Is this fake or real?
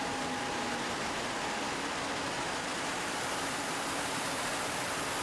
real